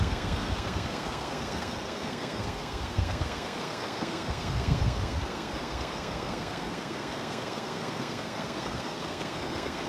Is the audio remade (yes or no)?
yes